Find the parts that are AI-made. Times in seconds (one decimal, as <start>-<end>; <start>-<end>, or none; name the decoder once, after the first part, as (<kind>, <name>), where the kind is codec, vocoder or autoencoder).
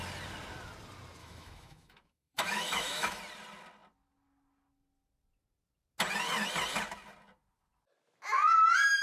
1.2-3.2 (autoencoder, DAC-VAE)